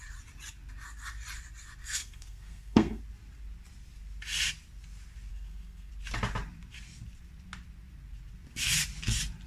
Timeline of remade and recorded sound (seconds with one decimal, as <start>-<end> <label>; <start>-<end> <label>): 0.0-1.8 recorded; 1.8-3.0 remade; 3.0-5.3 recorded; 5.3-5.9 remade; 5.9-9.5 recorded